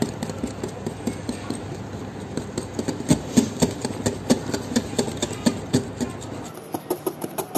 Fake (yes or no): no